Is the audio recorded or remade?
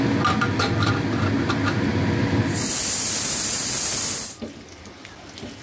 recorded